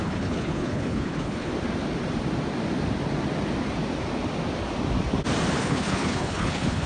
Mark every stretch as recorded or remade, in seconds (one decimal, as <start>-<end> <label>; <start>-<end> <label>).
0.0-1.5 remade; 1.5-5.6 recorded; 5.6-6.9 remade